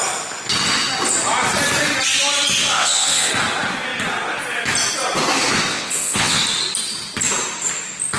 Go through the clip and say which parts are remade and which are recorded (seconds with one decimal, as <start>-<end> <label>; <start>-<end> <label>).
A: 0.0-2.6 recorded; 2.6-3.3 remade; 3.3-5.7 recorded; 5.7-6.4 remade; 6.4-8.2 recorded